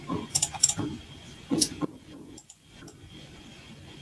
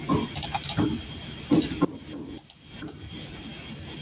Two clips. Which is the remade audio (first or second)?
first